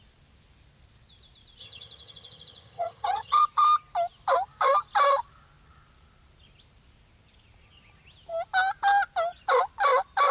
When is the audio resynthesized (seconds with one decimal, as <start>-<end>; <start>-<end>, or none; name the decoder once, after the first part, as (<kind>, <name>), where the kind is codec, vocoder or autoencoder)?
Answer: 1.6-3.4 (vocoder, HiFi-GAN)